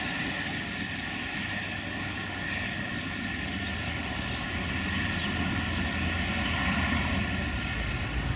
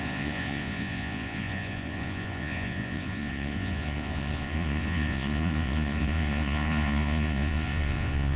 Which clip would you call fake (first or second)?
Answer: second